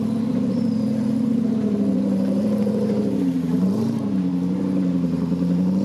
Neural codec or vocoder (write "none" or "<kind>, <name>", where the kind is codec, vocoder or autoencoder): vocoder, BigVGAN v2